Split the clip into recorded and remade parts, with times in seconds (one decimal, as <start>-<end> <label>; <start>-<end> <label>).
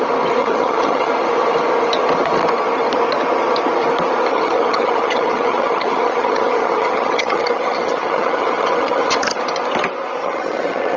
0.0-0.4 recorded; 0.4-1.1 remade; 1.1-4.3 recorded; 4.3-9.4 remade; 9.4-10.2 recorded; 10.2-11.0 remade